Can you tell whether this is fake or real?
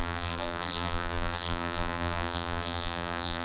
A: fake